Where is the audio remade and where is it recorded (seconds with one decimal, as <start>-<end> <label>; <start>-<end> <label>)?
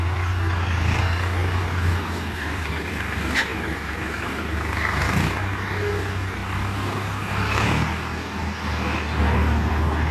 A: 0.0-10.1 remade